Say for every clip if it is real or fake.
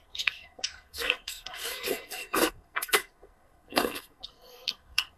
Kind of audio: fake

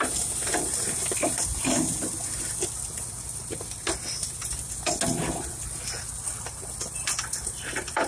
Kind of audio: real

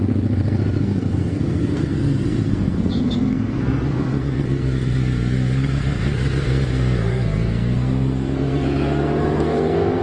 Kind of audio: fake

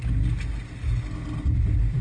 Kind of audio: real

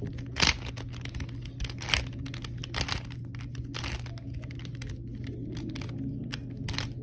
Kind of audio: real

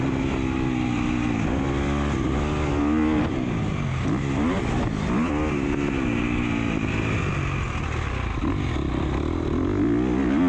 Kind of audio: real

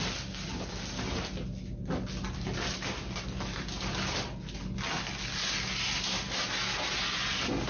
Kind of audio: real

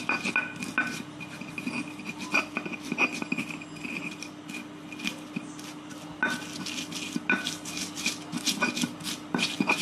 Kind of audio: real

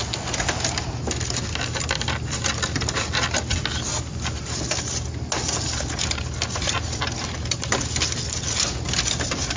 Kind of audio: real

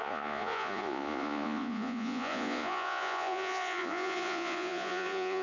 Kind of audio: fake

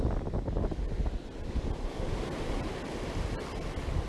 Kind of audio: real